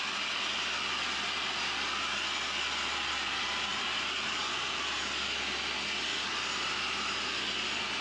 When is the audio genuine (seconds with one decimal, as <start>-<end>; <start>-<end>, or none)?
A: 0.0-8.0

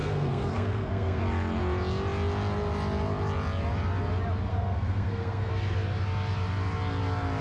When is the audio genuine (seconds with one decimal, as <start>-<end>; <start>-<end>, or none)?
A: 1.2-4.5; 5.5-7.4